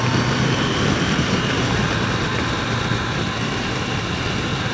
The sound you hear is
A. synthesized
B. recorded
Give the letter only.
A